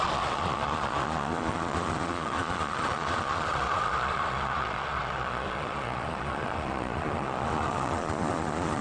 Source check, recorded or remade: remade